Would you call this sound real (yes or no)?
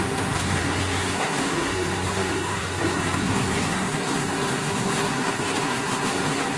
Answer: no